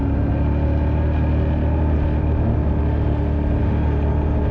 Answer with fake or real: real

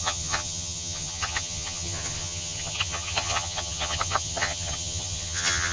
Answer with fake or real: fake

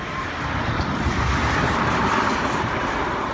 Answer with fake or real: fake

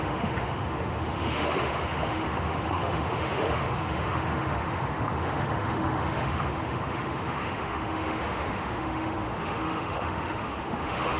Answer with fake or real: fake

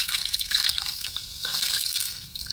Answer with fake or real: fake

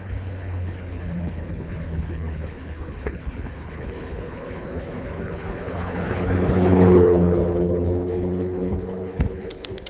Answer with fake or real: fake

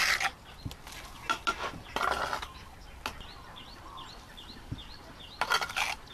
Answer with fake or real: real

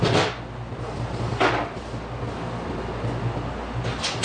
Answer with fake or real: real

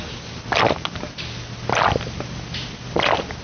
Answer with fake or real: real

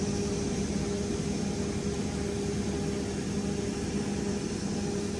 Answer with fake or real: real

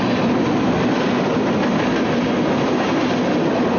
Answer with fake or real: real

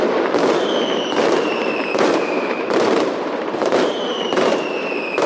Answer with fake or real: fake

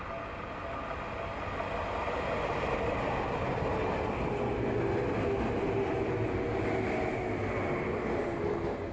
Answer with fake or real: real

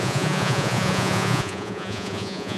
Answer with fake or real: fake